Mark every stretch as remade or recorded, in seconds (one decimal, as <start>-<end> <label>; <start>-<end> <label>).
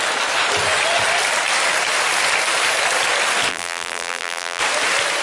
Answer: 0.0-3.5 recorded; 3.5-4.6 remade; 4.6-5.2 recorded